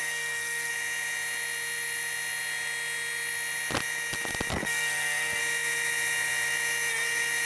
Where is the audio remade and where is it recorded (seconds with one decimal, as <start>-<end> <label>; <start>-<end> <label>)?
0.0-0.7 remade; 0.7-4.5 recorded; 4.5-5.4 remade; 5.4-7.5 recorded